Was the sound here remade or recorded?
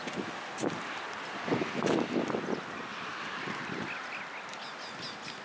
recorded